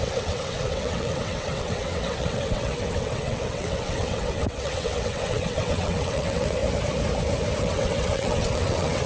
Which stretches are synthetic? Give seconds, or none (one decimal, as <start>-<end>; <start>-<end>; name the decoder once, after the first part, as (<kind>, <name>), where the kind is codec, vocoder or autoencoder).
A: 0.0-6.6 (vocoder, WaveNeXt); 7.6-9.1